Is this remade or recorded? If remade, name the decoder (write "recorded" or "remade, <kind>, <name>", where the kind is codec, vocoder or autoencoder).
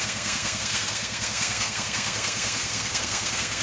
remade, codec, SNAC